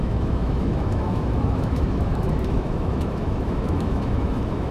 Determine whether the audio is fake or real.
fake